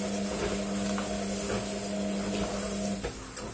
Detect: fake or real real